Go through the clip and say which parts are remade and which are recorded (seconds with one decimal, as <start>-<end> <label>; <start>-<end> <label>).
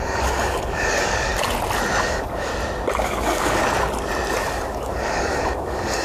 0.0-1.3 remade; 1.3-2.0 recorded; 2.0-2.5 remade; 2.5-3.0 recorded; 3.0-3.6 remade; 3.6-4.4 recorded; 4.4-6.0 remade